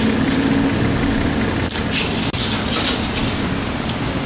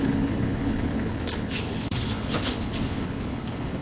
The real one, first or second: first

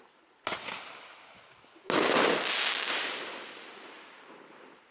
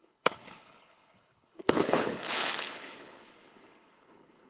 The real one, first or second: first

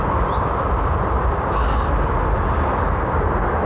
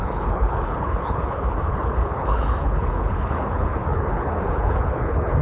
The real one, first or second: first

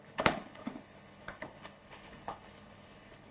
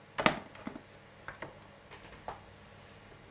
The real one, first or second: second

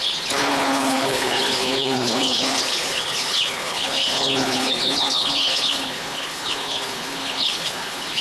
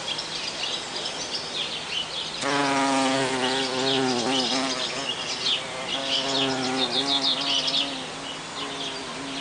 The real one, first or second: second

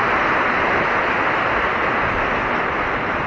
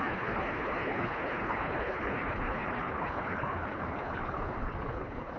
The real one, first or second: first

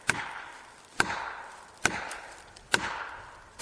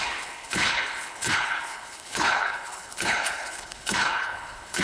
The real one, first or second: first